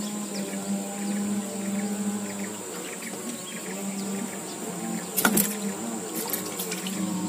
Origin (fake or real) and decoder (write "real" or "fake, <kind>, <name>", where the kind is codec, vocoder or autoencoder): real